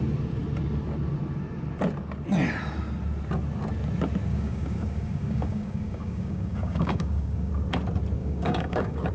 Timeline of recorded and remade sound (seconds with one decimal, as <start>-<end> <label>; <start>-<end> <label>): 0.0-4.3 recorded; 4.3-7.5 remade; 7.5-8.2 recorded; 8.2-9.1 remade